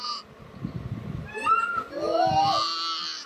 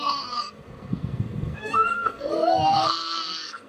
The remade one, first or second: second